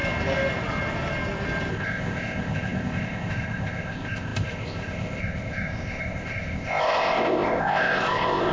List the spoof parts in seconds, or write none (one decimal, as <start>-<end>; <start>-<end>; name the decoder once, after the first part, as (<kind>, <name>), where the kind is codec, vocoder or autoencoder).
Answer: 1.7-8.5 (codec, ZipCodec)